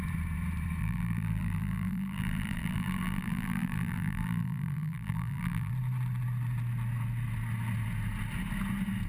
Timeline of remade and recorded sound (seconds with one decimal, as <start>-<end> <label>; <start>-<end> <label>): 0.0-0.8 recorded; 0.8-5.7 remade; 5.7-9.1 recorded